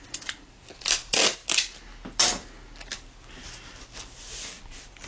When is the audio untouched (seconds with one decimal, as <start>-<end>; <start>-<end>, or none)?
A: 0.0-5.1